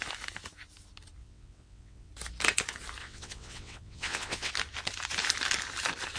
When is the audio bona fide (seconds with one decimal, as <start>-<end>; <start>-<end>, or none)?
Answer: 0.0-1.2; 2.1-3.0; 4.5-6.2